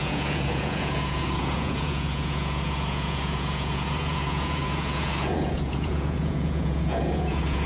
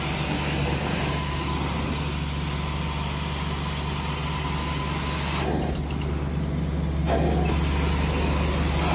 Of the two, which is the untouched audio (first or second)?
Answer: second